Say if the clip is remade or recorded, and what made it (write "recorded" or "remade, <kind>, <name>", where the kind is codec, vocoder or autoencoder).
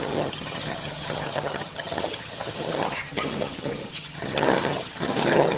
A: remade, vocoder, HiFi-GAN